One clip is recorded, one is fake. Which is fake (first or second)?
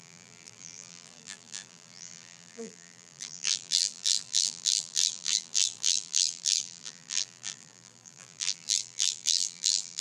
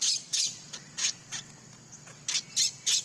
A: first